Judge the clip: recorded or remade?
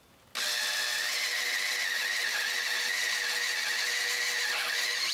recorded